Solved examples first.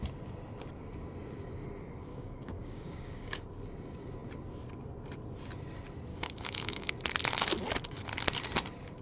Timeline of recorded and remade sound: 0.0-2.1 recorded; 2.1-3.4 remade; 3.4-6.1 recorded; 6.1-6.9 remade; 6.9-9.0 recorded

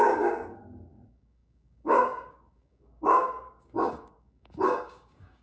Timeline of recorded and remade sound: 0.0-5.4 remade

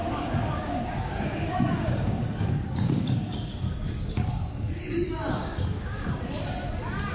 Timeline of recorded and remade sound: 0.0-6.2 remade; 6.2-7.1 recorded

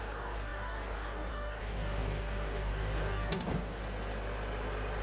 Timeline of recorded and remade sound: 0.0-3.8 remade; 3.8-5.0 recorded

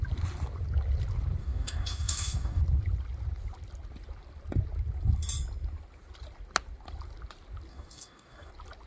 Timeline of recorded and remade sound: 0.0-1.4 recorded; 1.4-2.6 remade; 2.6-7.7 recorded; 7.7-8.5 remade; 8.5-8.9 recorded

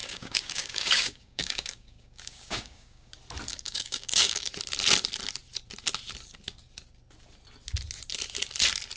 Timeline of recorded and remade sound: 0.0-3.1 remade; 3.1-3.5 recorded; 3.5-4.5 remade; 4.5-9.0 recorded

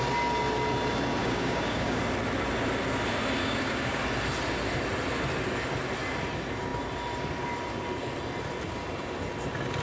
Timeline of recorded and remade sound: 0.0-1.2 recorded; 1.2-2.0 remade; 2.0-3.4 recorded; 3.4-4.0 remade; 4.0-9.8 recorded